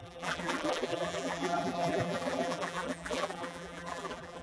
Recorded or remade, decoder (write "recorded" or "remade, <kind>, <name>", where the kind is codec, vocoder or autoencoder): remade, vocoder, BigVGAN v2